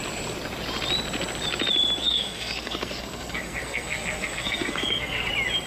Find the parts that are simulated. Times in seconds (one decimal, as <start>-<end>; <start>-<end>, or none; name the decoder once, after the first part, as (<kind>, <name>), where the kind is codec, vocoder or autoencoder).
2.0-5.3 (codec, SNAC)